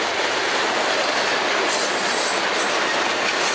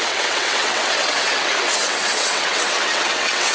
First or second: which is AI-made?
second